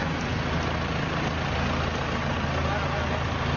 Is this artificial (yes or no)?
no